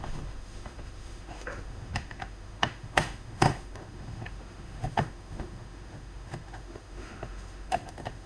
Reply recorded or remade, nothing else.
remade